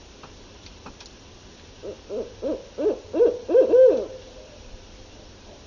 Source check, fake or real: real